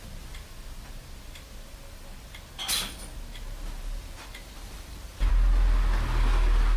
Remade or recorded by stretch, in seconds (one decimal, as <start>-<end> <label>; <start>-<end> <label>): 0.0-4.4 recorded; 4.4-5.3 remade; 5.3-6.8 recorded

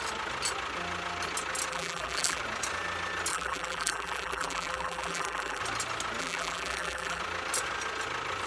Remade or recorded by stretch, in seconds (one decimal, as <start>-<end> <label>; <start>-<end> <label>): 0.0-1.7 recorded; 1.7-2.4 remade; 2.4-3.3 recorded; 3.3-5.6 remade; 5.6-6.2 recorded; 6.2-7.2 remade; 7.2-8.5 recorded

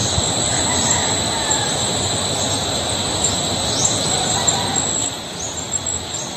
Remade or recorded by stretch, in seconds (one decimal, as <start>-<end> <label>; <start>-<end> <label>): 0.0-0.6 remade; 0.6-6.4 recorded

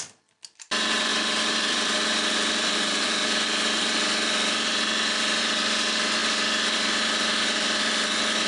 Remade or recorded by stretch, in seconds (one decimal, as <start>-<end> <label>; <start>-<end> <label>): 0.0-1.1 recorded; 1.1-5.4 remade; 5.4-8.5 recorded

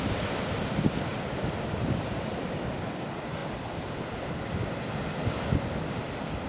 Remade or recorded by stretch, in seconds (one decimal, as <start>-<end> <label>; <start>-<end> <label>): 0.0-1.1 recorded; 1.1-2.4 remade; 2.4-6.5 recorded

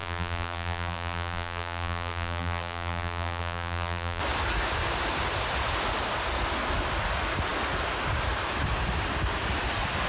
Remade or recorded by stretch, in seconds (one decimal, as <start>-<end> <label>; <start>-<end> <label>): 0.0-4.2 remade; 4.2-10.1 recorded

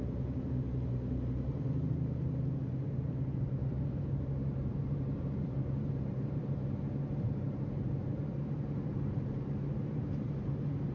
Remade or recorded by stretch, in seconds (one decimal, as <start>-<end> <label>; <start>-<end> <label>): 0.0-10.9 remade

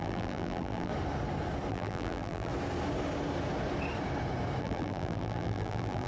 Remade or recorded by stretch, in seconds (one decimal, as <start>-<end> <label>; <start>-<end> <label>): 0.0-0.9 remade; 0.9-1.7 recorded; 1.7-2.5 remade; 2.5-4.6 recorded; 4.6-6.1 remade